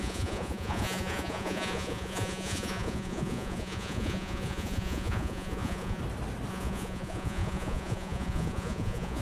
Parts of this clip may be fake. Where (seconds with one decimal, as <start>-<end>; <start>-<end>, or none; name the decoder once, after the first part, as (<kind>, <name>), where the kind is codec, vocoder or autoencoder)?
0.0-6.0 (vocoder, Vocos); 6.5-9.2

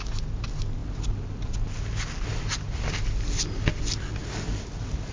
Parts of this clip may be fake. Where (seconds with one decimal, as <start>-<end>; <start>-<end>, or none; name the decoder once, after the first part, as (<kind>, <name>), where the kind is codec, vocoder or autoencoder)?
none

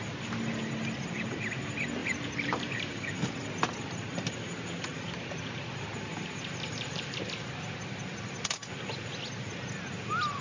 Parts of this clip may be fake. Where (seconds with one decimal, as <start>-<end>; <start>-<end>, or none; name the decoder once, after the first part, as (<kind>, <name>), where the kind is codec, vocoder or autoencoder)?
2.0-7.2 (vocoder, BigVGAN v2)